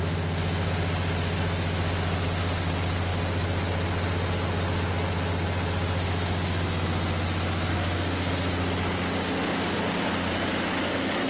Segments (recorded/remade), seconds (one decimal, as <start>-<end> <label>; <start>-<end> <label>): 0.0-11.3 recorded